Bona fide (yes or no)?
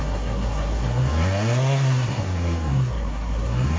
no